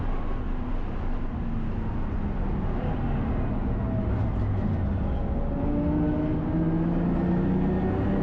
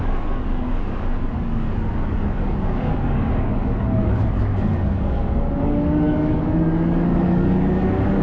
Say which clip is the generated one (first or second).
second